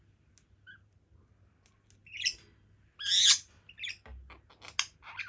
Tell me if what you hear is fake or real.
real